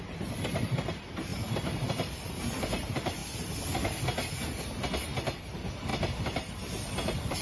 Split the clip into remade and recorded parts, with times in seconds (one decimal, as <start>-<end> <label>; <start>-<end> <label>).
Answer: 0.0-3.2 remade; 3.2-5.4 recorded; 5.4-5.9 remade; 5.9-6.5 recorded; 6.5-7.4 remade